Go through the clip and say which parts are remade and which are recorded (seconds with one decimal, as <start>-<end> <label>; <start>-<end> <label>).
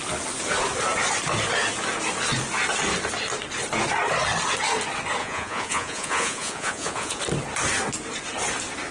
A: 0.0-5.2 recorded; 5.2-7.2 remade; 7.2-8.9 recorded